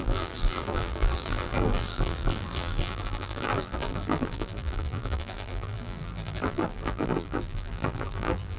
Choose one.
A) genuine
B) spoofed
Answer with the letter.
B